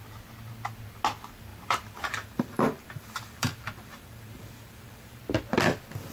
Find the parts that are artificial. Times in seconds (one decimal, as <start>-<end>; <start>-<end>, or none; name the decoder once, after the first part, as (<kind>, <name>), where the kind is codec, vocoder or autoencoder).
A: 1.5-5.2 (vocoder, BigVGAN v2)